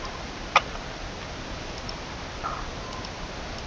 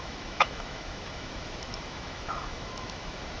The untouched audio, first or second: first